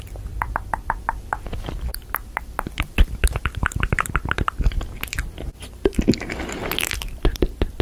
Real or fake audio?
fake